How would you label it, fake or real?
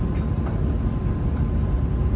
real